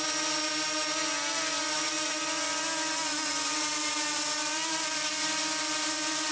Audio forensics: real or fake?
real